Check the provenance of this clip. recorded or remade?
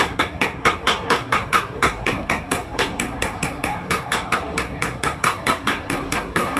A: remade